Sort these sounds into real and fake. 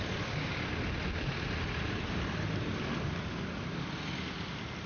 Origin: real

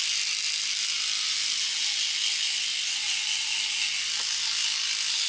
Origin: real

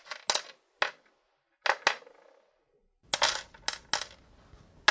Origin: real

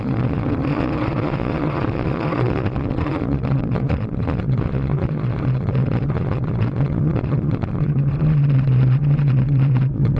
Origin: fake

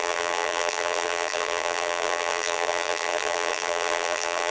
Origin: fake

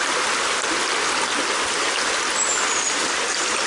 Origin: real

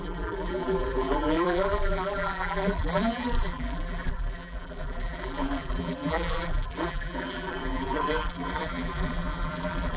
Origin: fake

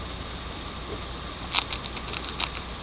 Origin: real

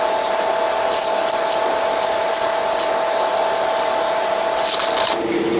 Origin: real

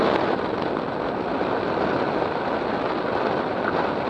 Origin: real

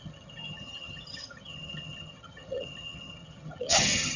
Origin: fake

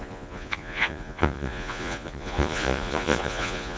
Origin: fake